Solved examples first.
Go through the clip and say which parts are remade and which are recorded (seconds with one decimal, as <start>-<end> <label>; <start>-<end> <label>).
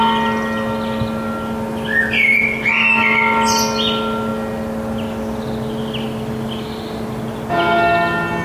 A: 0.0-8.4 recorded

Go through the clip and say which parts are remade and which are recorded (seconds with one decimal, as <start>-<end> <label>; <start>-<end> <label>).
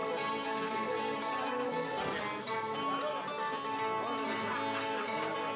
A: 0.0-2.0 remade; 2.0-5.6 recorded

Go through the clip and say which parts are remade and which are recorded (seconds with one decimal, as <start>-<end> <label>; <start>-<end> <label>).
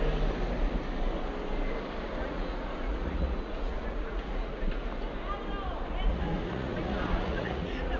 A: 0.0-2.2 recorded; 2.2-4.5 remade; 4.5-6.1 recorded; 6.1-8.0 remade